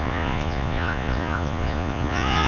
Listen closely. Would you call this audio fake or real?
fake